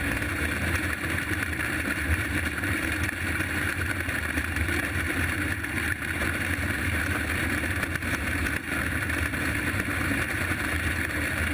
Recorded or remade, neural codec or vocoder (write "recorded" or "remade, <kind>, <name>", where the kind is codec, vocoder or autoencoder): remade, vocoder, BigVGAN v2